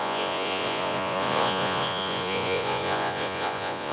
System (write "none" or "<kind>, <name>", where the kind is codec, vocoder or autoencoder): vocoder, Vocos